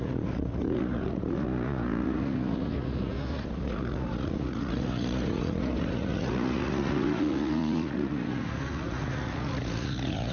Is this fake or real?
fake